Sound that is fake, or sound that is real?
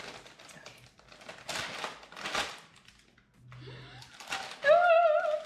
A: real